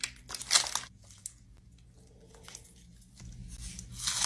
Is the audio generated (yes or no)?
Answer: no